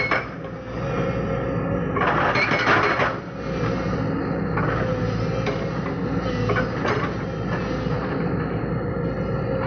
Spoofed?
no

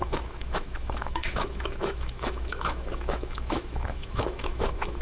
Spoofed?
yes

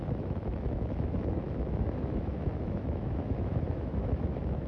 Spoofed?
yes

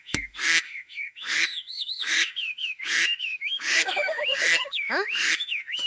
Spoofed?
yes